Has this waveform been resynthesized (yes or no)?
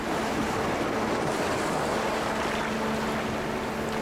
no